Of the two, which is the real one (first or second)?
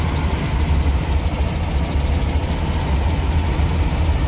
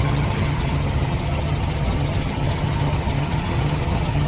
first